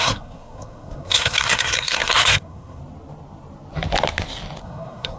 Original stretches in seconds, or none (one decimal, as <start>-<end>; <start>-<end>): 2.8-4.6